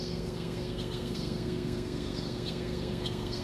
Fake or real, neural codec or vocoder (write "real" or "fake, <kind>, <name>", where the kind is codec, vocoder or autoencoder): fake, codec, SNAC